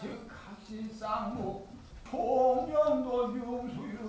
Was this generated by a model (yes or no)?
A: no